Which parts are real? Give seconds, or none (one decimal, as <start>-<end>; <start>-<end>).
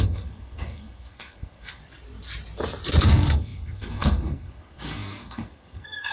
1.8-3.0